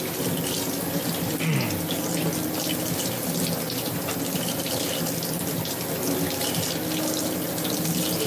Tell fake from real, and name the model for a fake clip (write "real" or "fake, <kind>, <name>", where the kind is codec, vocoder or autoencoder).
real